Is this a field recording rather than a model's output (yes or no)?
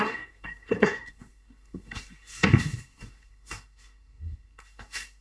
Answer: no